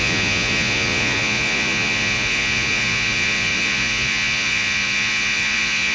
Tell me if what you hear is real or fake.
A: fake